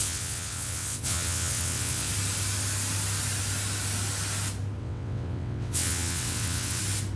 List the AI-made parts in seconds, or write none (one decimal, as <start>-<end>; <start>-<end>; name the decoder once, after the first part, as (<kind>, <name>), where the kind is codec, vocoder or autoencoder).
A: 0.0-2.1 (vocoder, WaveNeXt); 4.8-6.8